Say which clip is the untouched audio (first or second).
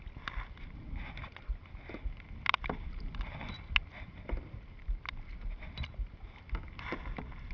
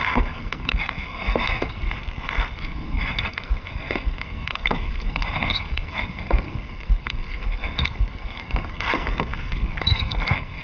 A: first